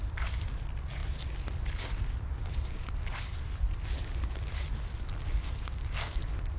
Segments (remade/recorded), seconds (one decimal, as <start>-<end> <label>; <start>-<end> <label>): 0.0-6.6 recorded